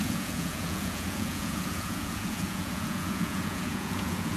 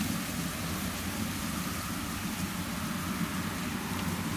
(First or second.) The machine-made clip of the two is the first